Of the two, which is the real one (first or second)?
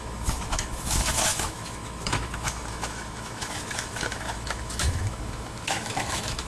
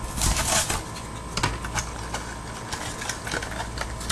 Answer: second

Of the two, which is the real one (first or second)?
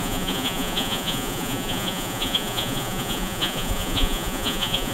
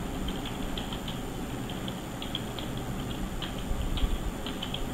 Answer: second